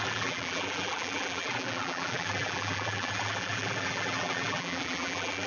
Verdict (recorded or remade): remade